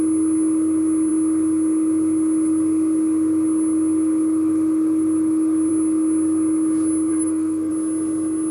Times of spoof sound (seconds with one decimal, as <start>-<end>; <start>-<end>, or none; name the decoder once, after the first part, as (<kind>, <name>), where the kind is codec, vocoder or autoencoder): 7.1-7.7 (codec, SNAC)

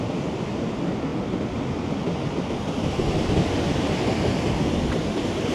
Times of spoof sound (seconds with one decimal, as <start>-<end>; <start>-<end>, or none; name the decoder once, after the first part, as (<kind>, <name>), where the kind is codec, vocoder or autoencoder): none

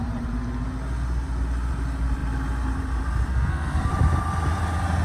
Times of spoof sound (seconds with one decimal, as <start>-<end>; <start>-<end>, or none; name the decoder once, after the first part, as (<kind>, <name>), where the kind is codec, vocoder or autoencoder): 3.3-3.9 (codec, SNAC)

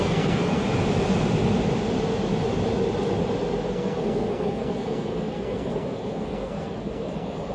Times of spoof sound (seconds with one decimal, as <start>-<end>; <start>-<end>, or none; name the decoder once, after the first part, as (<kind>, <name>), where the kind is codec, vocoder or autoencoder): 0.0-0.6 (codec, SNAC); 3.7-7.5

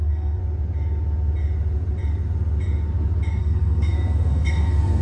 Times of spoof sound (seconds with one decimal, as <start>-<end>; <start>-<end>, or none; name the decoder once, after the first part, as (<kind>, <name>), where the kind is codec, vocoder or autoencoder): 0.0-0.4 (codec, SNAC); 3.4-5.0